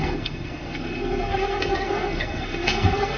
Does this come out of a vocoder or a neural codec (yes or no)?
yes